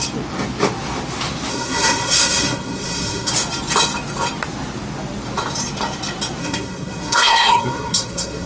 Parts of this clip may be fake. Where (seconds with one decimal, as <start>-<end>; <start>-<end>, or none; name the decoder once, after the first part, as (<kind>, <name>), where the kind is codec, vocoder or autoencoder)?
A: 1.5-3.3 (codec, SNAC); 6.4-8.5